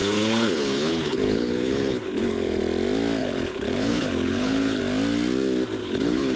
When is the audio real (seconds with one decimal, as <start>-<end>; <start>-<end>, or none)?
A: 2.6-3.2; 4.8-5.8